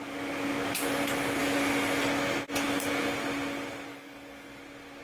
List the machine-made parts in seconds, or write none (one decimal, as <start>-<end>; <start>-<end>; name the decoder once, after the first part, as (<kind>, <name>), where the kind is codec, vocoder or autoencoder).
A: 3.9-4.6 (codec, DAC)